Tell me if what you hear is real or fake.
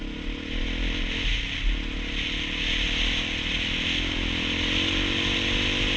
real